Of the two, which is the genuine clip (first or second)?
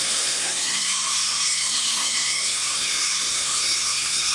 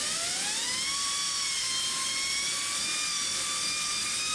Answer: second